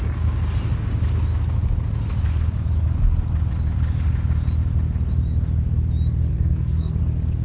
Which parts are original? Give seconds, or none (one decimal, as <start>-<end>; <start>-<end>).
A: 0.0-6.3; 7.0-7.4